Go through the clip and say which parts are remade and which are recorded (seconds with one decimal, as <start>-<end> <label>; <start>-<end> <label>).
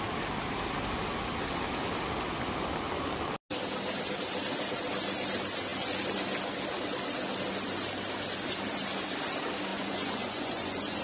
0.0-9.7 recorded; 9.7-11.0 remade